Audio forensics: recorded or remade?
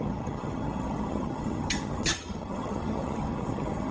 remade